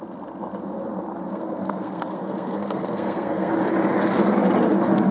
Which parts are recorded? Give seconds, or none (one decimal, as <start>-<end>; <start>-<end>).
0.0-1.3; 3.5-5.1